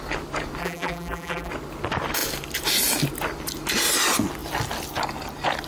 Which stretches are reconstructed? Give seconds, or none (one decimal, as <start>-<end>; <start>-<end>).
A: 0.6-1.5